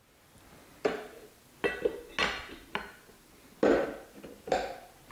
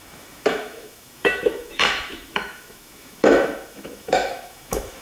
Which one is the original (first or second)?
first